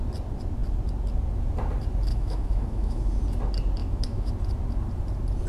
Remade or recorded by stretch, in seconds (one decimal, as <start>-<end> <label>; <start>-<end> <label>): 0.0-2.1 recorded; 2.1-3.2 remade; 3.2-3.8 recorded; 3.8-4.3 remade; 4.3-5.5 recorded